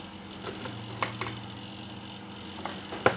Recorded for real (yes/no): yes